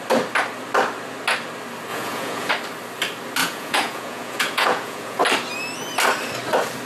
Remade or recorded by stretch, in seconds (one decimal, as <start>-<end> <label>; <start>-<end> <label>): 0.0-1.9 recorded; 1.9-2.5 remade; 2.5-3.4 recorded; 3.4-5.2 remade; 5.2-6.9 recorded